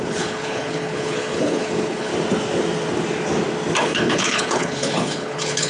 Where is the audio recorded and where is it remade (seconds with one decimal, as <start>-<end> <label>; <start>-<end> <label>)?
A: 0.0-2.1 remade; 2.1-3.8 recorded; 3.8-5.7 remade